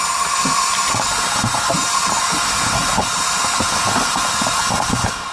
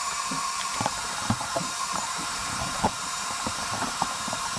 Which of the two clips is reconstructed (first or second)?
second